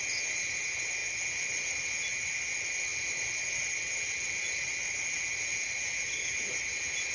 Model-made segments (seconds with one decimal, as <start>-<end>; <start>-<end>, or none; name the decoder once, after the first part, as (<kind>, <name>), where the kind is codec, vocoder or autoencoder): none